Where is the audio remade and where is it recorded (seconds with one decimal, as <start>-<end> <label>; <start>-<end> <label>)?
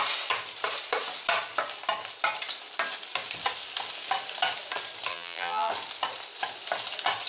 0.0-5.1 recorded; 5.1-5.7 remade; 5.7-7.3 recorded